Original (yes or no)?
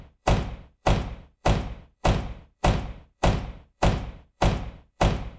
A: no